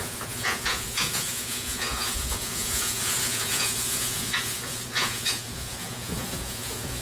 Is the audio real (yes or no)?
no